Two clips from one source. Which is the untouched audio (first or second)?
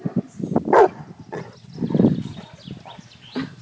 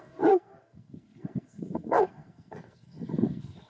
first